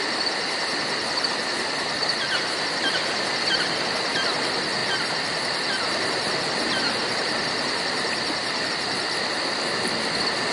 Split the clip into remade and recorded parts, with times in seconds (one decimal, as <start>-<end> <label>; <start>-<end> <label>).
0.0-10.5 recorded